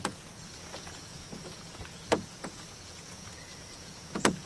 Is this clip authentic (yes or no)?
no